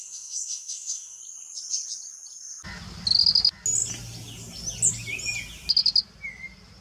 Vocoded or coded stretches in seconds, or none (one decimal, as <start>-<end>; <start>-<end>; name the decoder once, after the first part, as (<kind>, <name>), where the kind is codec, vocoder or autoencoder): 0.0-1.2 (autoencoder, DAC-VAE)